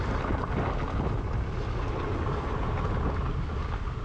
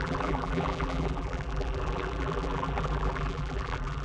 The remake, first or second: second